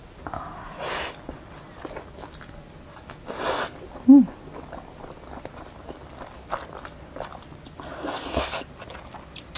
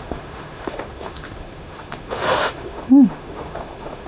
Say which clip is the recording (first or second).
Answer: first